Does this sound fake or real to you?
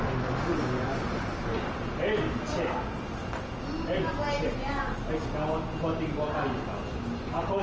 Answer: real